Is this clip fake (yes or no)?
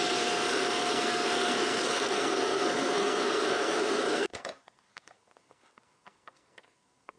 yes